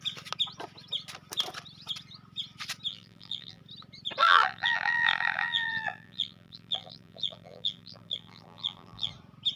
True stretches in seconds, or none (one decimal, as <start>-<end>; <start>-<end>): 0.0-2.9; 3.6-4.2; 9.1-9.6